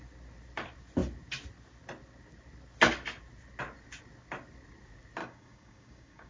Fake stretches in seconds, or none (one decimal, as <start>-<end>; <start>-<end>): 5.2-6.3